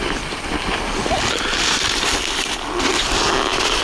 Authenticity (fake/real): real